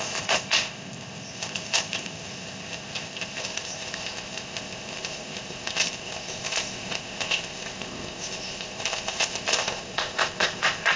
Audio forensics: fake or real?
fake